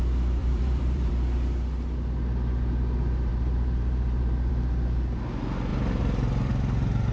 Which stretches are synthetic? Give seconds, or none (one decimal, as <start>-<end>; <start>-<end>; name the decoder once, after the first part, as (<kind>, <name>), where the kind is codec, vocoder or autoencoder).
0.4-1.1 (vocoder, BigVGAN v2); 3.3-4.5; 5.7-6.5